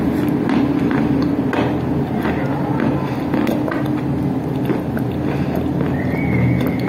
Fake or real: real